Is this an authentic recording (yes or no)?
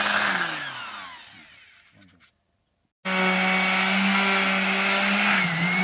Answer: yes